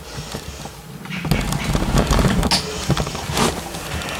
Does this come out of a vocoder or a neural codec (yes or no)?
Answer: no